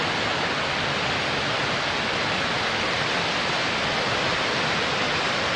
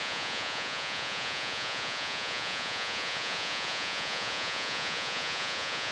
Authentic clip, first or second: first